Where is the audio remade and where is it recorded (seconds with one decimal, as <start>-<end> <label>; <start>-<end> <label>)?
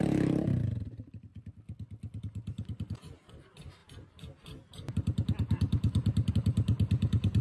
0.0-1.3 remade; 1.3-2.2 recorded; 2.2-7.4 remade